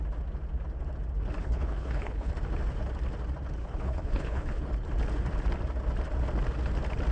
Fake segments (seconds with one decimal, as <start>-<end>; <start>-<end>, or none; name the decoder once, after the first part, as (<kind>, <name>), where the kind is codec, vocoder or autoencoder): 1.4-2.3 (codec, HILCodec); 3.6-4.6